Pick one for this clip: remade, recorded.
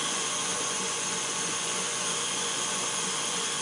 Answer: remade